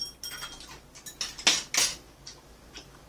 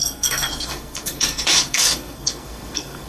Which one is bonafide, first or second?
first